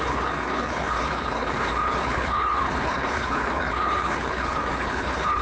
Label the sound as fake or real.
fake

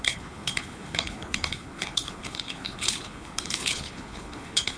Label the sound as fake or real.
fake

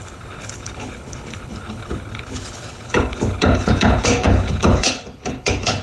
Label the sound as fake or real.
fake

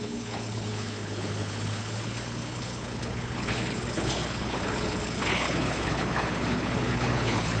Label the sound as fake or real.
fake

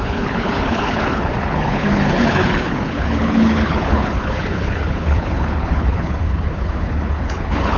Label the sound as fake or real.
fake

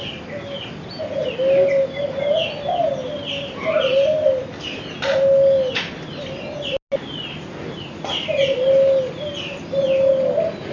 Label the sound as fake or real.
real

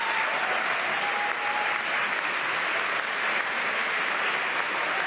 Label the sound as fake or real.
real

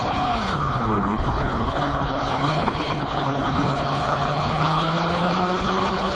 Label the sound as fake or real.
fake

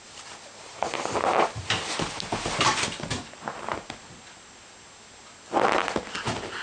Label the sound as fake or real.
real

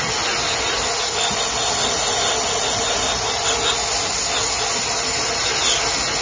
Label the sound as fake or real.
real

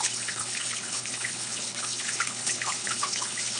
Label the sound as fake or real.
fake